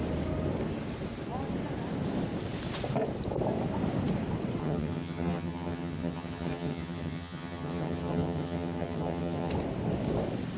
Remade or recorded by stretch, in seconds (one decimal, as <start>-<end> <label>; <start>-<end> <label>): 0.0-4.6 recorded; 4.6-9.5 remade; 9.5-10.6 recorded